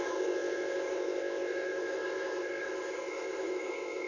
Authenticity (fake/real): fake